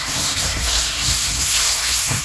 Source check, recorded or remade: remade